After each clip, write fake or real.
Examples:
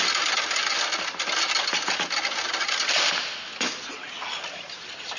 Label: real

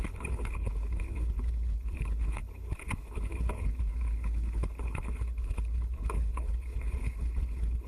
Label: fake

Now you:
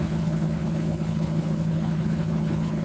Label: fake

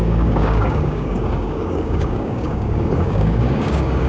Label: fake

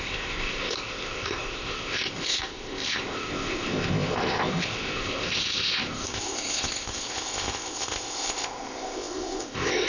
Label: fake